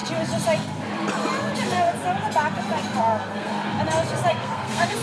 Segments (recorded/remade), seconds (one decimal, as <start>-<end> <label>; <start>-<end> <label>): 0.0-3.0 recorded; 3.0-3.5 remade; 3.5-4.3 recorded; 4.3-5.0 remade

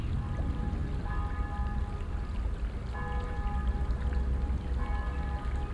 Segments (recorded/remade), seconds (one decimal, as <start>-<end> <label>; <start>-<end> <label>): 0.0-5.7 recorded